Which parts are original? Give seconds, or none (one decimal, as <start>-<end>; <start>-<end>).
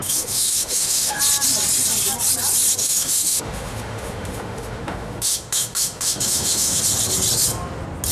1.2-2.8; 6.8-8.1